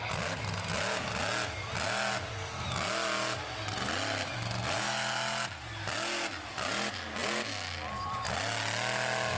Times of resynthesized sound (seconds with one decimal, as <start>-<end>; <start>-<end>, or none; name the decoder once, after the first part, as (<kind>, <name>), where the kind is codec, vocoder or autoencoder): none